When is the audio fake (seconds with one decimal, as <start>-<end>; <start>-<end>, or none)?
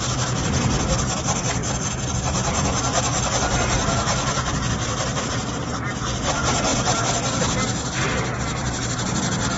none